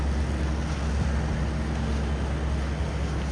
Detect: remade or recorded recorded